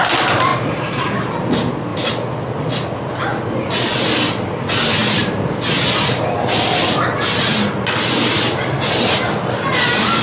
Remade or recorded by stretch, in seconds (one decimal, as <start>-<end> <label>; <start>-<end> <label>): 0.0-10.2 recorded